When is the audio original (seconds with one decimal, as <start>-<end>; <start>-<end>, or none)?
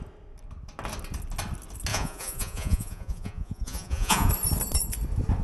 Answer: 0.0-1.9; 4.3-5.4